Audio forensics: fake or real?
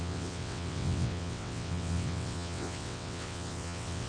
fake